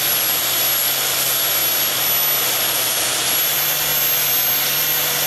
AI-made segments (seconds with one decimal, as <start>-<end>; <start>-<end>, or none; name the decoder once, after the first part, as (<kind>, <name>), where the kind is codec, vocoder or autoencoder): none